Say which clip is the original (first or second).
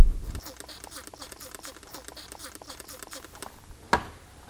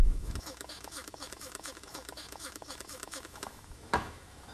first